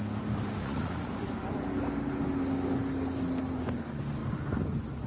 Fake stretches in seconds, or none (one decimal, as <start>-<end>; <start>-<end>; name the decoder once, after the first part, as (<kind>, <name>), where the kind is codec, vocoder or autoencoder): 0.6-1.1 (vocoder, Vocos)